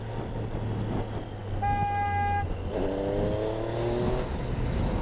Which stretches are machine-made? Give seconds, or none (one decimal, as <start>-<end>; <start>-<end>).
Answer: none